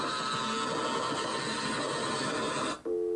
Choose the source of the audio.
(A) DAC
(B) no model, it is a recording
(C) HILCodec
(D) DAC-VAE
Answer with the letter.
B